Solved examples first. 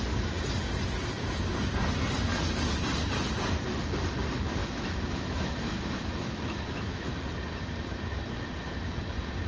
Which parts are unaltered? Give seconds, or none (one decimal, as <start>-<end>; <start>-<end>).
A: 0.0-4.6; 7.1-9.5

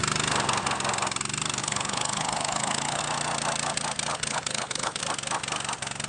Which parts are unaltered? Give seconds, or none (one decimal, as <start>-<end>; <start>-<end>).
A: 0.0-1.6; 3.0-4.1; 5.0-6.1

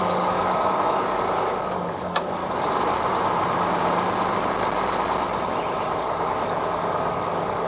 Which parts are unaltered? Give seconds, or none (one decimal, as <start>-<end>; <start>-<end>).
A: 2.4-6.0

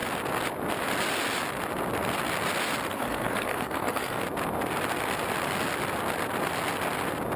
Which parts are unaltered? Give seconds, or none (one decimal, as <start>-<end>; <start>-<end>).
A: 0.0-2.9; 4.2-7.4